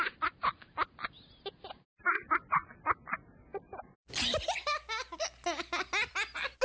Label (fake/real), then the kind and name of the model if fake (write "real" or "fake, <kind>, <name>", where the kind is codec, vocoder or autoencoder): real